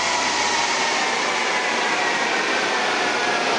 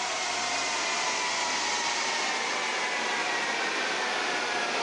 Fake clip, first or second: first